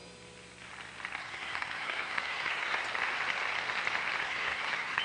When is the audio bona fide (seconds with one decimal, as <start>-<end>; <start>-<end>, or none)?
0.0-1.2; 2.8-4.2